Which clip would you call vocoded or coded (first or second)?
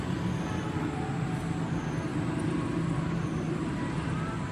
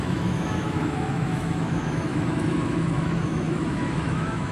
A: second